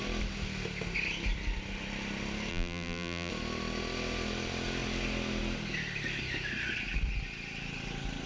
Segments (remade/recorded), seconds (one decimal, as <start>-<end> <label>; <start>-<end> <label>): 0.0-2.5 recorded; 2.5-3.3 remade; 3.3-8.3 recorded